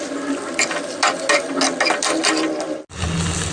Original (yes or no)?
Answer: yes